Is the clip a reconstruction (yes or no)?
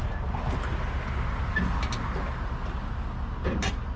no